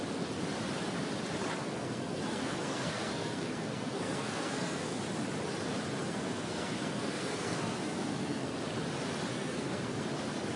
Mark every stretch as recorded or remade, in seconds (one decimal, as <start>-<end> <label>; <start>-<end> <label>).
0.0-1.6 recorded; 1.6-5.0 remade; 5.0-6.0 recorded; 6.0-8.6 remade; 8.6-9.3 recorded; 9.3-10.1 remade; 10.1-10.6 recorded

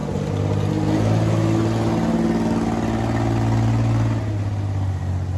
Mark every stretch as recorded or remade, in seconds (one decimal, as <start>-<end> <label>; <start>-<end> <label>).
0.0-5.4 recorded

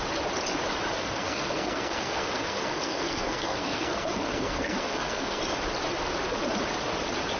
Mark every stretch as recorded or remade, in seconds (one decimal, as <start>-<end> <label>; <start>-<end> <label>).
0.0-1.0 recorded; 1.0-5.4 remade; 5.4-7.4 recorded

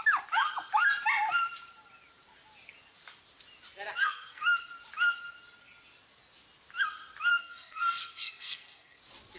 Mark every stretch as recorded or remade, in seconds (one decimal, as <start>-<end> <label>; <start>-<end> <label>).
0.0-4.0 recorded; 4.0-4.7 remade; 4.7-7.3 recorded; 7.3-9.0 remade; 9.0-9.4 recorded